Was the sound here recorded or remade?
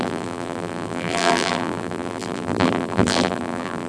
remade